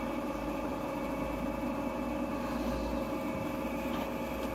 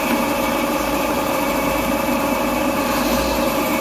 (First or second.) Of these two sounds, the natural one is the first